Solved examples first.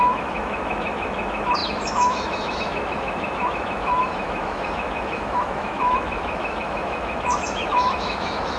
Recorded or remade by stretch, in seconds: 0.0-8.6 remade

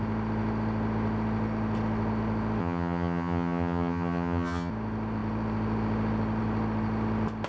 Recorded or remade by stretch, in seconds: 0.0-2.6 recorded; 2.6-4.7 remade; 4.7-7.5 recorded

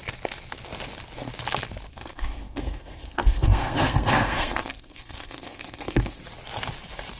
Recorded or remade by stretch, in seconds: 0.0-1.9 recorded; 1.9-6.2 remade; 6.2-7.2 recorded

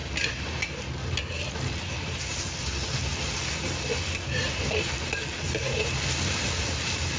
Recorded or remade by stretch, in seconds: 0.0-7.2 recorded

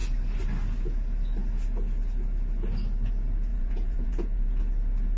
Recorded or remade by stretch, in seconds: 0.0-3.5 recorded; 3.5-4.6 remade; 4.6-5.2 recorded

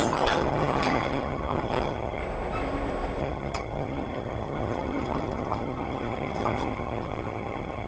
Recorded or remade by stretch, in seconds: 0.0-2.2 remade; 2.2-3.2 recorded; 3.2-7.9 remade